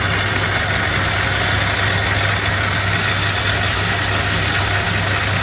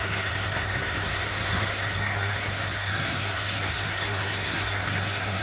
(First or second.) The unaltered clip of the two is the first